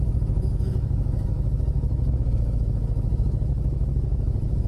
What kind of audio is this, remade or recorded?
remade